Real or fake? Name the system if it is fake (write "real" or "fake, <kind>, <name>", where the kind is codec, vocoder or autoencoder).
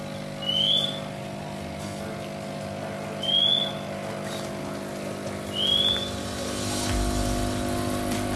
real